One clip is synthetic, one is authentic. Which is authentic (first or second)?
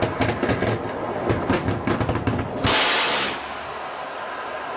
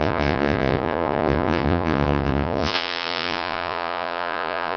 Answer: first